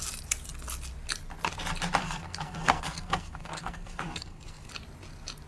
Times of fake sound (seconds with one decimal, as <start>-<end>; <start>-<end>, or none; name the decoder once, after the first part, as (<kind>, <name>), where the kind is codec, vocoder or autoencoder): 2.0-4.7 (codec, SNAC)